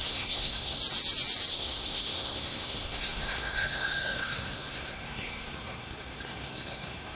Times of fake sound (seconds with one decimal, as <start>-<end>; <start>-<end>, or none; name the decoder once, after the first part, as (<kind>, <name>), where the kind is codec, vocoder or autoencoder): 0.0-0.8 (codec, SNAC); 1.5-7.1